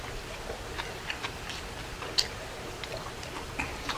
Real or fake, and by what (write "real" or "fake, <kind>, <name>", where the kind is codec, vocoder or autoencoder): real